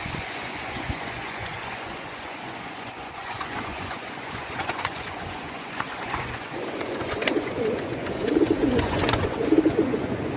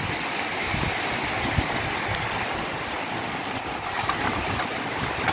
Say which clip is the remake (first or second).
first